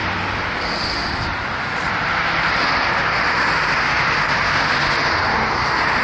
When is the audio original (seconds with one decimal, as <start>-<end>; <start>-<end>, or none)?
3.6-6.0